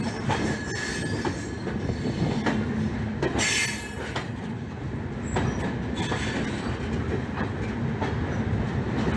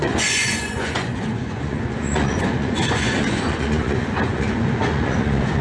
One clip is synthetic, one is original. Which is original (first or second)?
first